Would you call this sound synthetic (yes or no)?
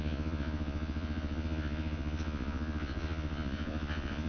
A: yes